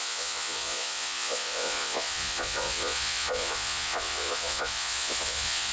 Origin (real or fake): fake